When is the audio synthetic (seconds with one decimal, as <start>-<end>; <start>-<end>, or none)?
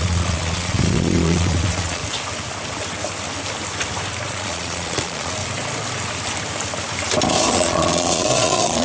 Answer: 0.0-2.0; 4.3-5.4; 7.5-8.8